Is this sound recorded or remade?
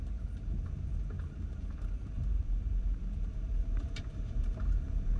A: remade